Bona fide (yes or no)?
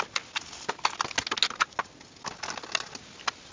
yes